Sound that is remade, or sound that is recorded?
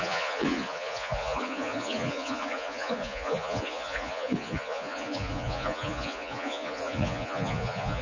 remade